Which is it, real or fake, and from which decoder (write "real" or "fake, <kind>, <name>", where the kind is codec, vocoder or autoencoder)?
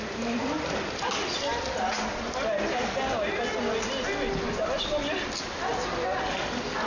real